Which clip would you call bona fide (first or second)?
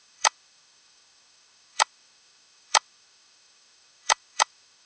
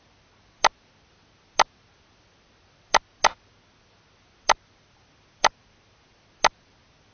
second